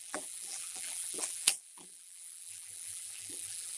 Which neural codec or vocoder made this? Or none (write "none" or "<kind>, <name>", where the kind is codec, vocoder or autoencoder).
vocoder, BigVGAN v2